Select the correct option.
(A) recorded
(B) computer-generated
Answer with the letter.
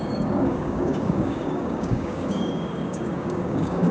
B